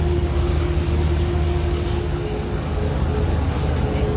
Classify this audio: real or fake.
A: fake